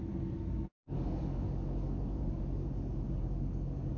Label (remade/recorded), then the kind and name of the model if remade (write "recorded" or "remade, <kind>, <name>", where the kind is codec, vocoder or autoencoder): remade, codec, DAC